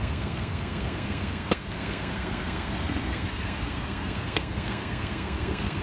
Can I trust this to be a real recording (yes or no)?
no